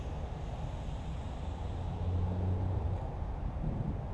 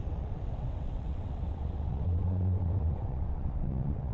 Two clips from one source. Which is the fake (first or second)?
second